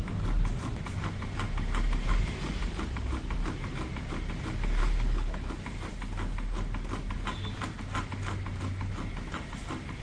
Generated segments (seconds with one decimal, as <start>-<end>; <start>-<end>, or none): 4.8-5.5